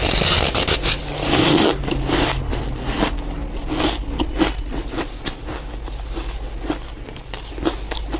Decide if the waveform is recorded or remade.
recorded